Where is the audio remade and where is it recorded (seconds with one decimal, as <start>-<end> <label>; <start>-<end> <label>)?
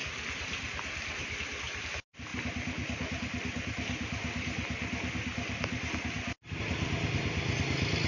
0.0-8.1 recorded